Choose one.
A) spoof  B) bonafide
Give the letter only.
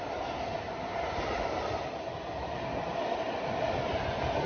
B